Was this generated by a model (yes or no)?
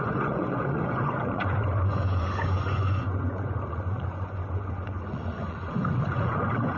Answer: yes